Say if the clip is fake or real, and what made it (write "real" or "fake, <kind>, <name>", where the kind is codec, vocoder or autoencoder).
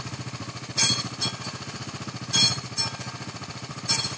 fake, vocoder, BigVGAN v2